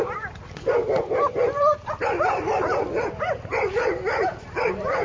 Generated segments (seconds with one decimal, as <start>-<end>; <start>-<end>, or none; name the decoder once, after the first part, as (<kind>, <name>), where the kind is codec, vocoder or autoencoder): none